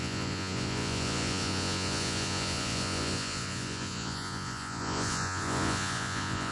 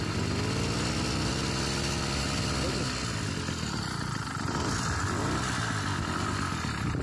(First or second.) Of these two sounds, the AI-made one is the first